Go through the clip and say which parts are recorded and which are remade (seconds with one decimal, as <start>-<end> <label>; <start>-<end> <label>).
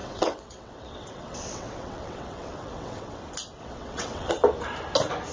0.0-3.2 remade; 3.2-3.6 recorded; 3.6-4.3 remade; 4.3-5.3 recorded